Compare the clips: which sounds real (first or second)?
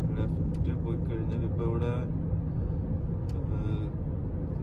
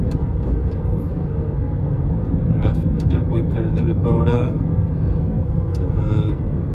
first